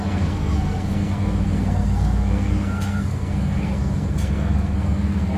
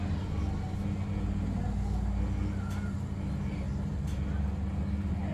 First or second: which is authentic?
second